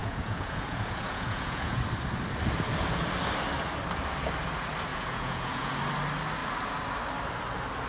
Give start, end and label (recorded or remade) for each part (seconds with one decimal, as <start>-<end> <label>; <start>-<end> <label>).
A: 0.0-1.8 remade; 1.8-4.9 recorded; 4.9-5.7 remade; 5.7-7.9 recorded